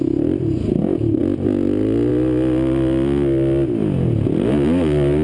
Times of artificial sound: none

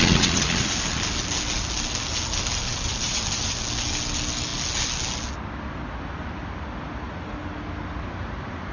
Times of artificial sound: 2.7-3.2 (vocoder, BigVGAN v2)

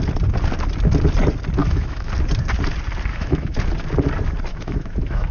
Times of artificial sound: 1.6-2.1 (autoencoder, DAC-VAE); 3.1-3.6; 4.5-5.3

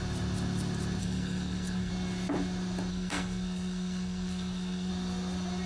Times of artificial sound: 1.0-1.9 (codec, SNAC); 2.9-4.9

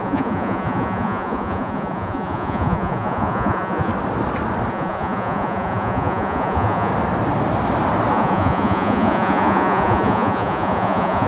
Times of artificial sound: 0.0-3.9 (vocoder, Vocos); 4.7-6.9; 8.1-11.3

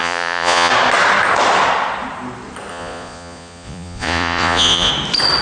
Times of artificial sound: 0.0-0.7 (vocoder, Vocos); 2.7-4.9

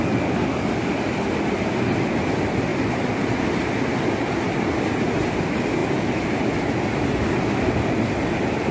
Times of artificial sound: 0.0-0.9 (codec, DAC)

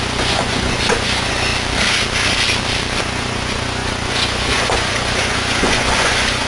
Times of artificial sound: 0.0-1.5 (vocoder, Vocos); 3.0-6.5